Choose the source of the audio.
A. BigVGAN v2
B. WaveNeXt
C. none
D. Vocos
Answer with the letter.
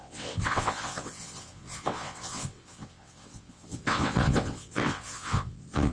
B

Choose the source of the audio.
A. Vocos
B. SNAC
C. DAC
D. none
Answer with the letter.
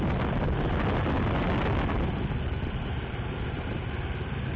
D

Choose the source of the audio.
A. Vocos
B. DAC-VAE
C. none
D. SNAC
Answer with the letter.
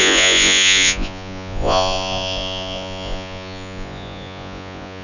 A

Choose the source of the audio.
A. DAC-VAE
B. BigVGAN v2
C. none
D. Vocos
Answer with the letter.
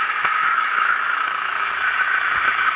A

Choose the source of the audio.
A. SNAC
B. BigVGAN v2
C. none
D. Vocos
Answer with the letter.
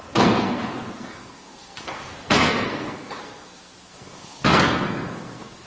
A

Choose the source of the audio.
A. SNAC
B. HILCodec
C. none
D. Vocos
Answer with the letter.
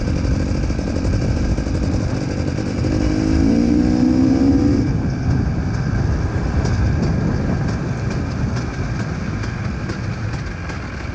C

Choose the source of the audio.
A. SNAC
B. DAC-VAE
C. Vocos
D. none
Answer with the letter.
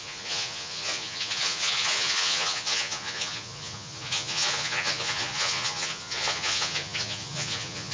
C